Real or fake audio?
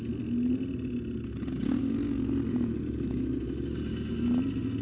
real